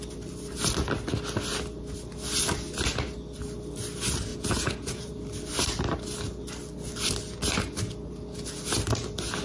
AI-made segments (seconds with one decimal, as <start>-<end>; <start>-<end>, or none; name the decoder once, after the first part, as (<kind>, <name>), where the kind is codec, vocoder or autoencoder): 4.3-5.1 (vocoder, Vocos)